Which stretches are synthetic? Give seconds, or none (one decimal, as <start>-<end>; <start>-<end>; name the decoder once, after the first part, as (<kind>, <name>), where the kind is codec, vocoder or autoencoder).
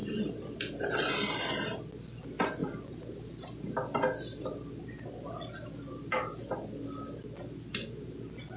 none